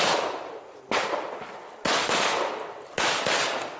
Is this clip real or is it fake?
real